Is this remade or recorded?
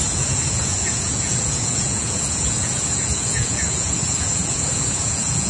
remade